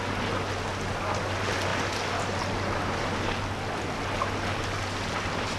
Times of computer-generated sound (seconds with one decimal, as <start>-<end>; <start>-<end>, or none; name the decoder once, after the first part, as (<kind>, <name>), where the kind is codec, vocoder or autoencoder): none